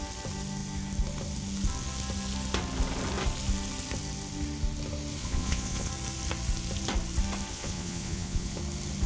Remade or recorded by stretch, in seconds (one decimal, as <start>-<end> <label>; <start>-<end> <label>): 0.0-5.2 recorded; 5.2-5.9 remade; 5.9-7.5 recorded; 7.5-8.6 remade; 8.6-9.1 recorded